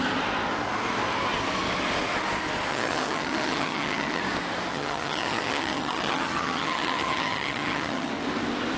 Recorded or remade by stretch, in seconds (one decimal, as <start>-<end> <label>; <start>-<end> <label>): 0.0-2.7 recorded; 2.7-4.2 remade; 4.2-4.7 recorded; 4.7-8.1 remade; 8.1-8.8 recorded